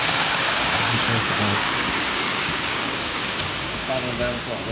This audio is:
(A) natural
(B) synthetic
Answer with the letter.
B